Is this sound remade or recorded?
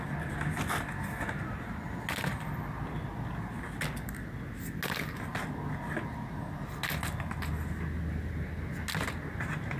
recorded